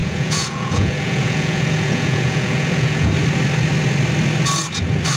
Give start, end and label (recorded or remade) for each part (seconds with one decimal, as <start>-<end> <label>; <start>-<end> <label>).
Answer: 0.0-3.1 remade; 3.1-5.2 recorded